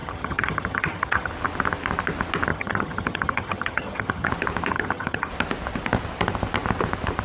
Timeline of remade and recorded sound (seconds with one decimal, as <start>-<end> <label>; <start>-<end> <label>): 0.0-1.3 remade; 1.3-2.5 recorded; 2.5-4.3 remade; 4.3-4.7 recorded; 4.7-5.3 remade; 5.3-7.2 recorded